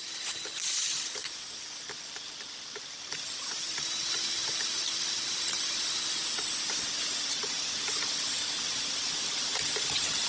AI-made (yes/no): yes